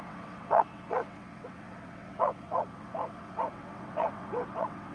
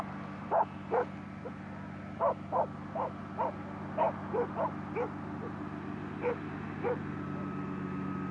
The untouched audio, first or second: second